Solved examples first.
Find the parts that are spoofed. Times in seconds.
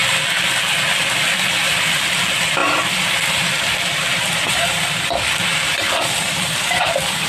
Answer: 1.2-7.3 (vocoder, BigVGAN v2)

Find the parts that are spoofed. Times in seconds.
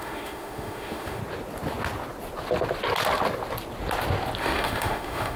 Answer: 0.0-1.2 (autoencoder, DAC-VAE); 4.4-5.4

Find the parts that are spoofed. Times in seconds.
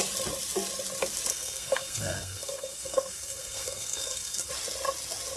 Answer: 1.3-4.5 (codec, SNAC)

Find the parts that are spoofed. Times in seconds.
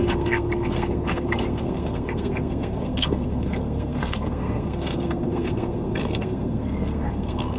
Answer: 0.0-7.6 (codec, SNAC)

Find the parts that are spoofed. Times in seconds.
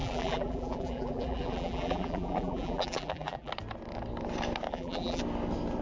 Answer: 0.0-3.5 (vocoder, BigVGAN v2); 4.7-5.2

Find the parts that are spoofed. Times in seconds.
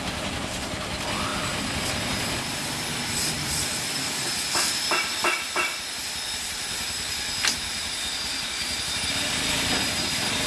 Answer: 0.0-1.3 (vocoder, BigVGAN v2); 1.9-10.5